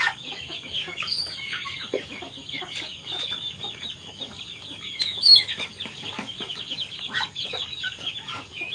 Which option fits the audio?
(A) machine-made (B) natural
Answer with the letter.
A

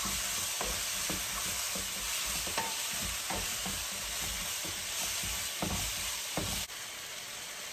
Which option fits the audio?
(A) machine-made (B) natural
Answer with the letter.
A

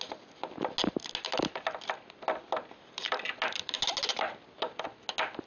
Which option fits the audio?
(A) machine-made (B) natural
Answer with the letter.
B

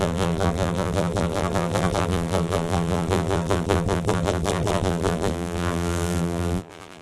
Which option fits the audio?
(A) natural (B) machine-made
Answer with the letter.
B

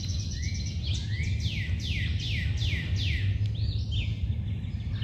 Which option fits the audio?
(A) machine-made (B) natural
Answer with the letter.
B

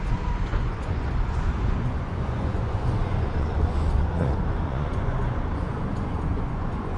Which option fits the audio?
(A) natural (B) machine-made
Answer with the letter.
B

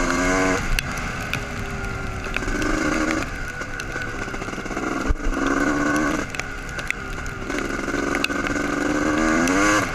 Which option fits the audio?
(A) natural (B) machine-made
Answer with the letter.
A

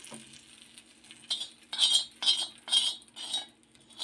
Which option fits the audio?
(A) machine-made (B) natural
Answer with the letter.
B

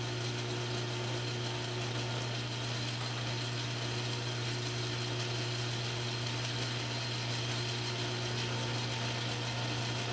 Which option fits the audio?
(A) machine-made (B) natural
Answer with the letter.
B